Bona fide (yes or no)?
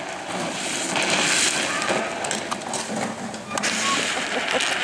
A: yes